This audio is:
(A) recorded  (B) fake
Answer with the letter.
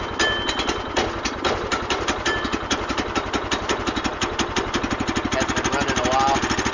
A